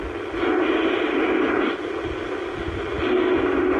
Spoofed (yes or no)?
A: no